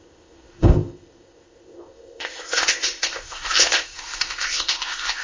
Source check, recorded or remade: remade